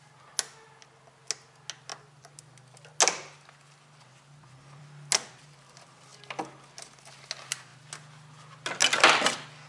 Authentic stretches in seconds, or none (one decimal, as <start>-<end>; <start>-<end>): 0.0-9.7